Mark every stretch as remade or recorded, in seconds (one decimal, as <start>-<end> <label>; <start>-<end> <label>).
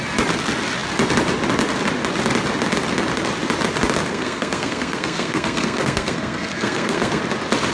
0.0-4.1 recorded; 4.1-7.2 remade; 7.2-7.7 recorded